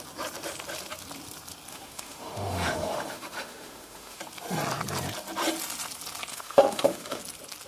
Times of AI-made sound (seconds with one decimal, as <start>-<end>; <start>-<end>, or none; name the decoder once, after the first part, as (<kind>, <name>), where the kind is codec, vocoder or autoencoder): 1.7-4.2 (autoencoder, DAC-VAE); 6.3-7.2